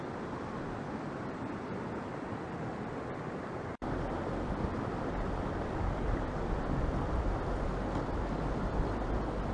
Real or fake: real